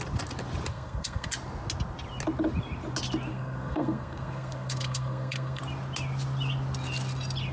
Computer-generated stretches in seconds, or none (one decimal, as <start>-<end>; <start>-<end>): 0.7-1.3; 3.3-5.6

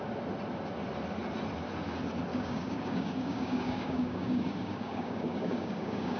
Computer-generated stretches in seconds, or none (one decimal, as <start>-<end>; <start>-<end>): 2.3-6.2